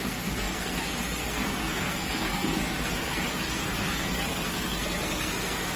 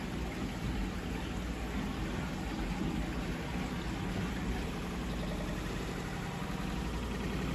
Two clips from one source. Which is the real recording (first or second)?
second